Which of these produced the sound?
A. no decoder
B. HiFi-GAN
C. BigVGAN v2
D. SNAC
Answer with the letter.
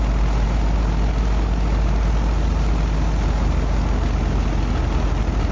A